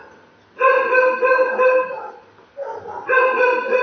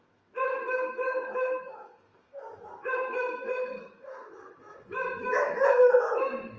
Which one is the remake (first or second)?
second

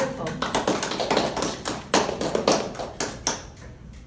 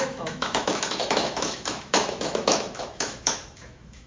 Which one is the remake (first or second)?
second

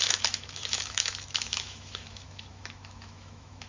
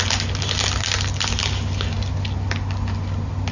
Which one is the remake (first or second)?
first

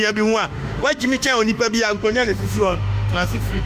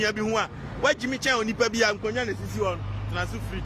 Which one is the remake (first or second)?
first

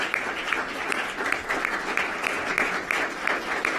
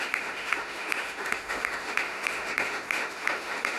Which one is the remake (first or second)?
second